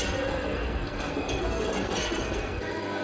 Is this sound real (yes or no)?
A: no